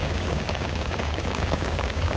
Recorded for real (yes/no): no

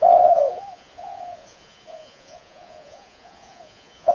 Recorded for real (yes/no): no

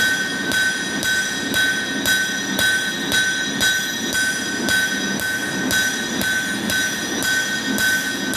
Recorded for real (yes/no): yes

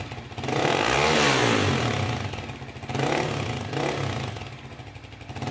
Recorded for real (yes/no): yes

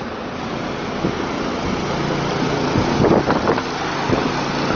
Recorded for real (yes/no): yes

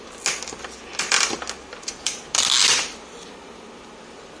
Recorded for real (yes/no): yes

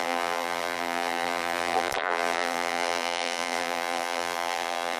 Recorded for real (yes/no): no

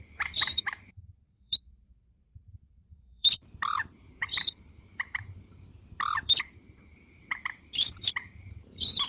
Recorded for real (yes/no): no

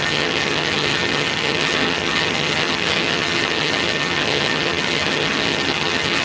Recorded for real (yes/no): no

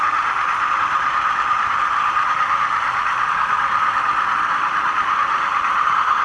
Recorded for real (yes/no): yes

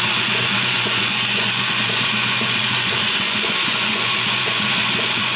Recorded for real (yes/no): no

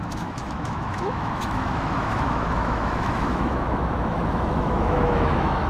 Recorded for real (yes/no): no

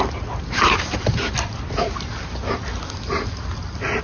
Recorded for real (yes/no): yes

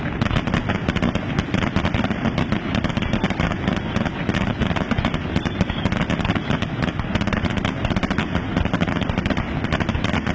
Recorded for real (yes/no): yes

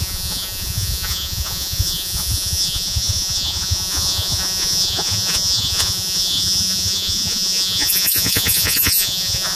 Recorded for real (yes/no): no